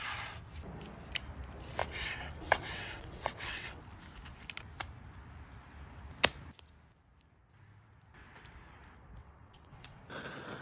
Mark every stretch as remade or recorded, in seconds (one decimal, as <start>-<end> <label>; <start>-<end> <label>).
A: 0.0-1.8 recorded; 1.8-3.8 remade; 3.8-9.2 recorded; 9.2-10.0 remade; 10.0-10.6 recorded